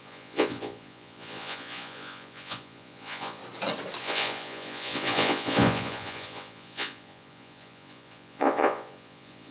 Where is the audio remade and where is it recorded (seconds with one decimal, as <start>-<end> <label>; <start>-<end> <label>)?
0.0-3.4 remade; 3.4-4.0 recorded; 4.0-9.5 remade